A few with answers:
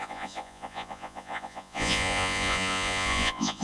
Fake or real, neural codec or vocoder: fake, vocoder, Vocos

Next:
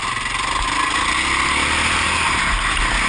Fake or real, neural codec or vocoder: real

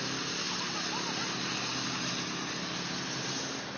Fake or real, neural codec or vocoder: real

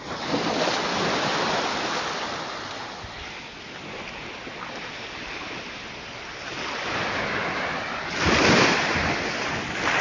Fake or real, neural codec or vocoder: real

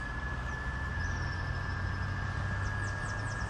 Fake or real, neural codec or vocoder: real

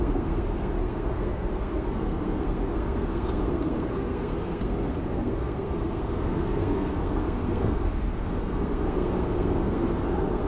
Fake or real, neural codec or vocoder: fake, codec, SNAC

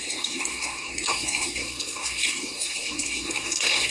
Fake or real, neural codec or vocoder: fake, codec, SNAC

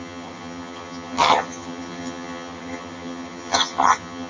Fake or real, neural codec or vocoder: fake, vocoder, HiFi-GAN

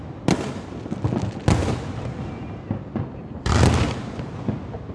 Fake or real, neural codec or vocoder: real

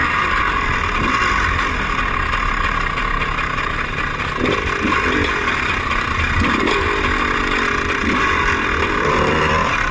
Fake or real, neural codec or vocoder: real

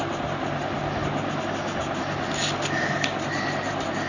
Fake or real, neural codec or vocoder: real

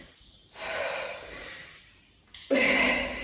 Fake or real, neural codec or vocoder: fake, vocoder, BigVGAN v2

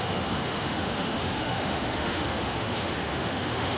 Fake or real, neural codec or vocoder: fake, autoencoder, DAC-VAE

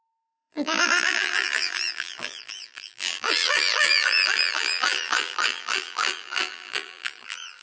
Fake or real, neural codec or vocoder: fake, vocoder, BigVGAN v2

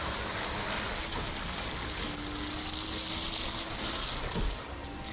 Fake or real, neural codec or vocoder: real